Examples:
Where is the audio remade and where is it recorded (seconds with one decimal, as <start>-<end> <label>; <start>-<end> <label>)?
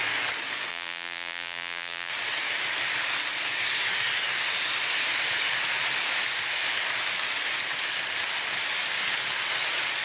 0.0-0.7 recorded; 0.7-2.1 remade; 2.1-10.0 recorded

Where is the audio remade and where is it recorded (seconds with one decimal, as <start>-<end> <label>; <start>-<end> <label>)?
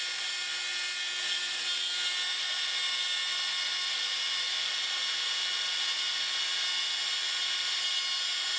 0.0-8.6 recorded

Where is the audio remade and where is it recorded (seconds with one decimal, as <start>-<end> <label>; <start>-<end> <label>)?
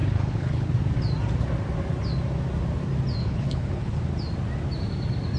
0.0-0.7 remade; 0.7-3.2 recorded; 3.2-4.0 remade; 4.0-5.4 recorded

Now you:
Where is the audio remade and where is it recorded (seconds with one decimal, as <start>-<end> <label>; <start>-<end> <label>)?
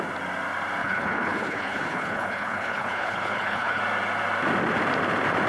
0.0-0.8 recorded; 0.8-3.8 remade; 3.8-5.5 recorded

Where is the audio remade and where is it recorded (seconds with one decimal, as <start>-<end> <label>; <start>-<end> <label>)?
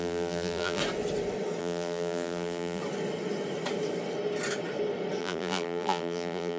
0.0-0.8 remade; 0.8-1.6 recorded; 1.6-2.8 remade; 2.8-5.2 recorded; 5.2-6.6 remade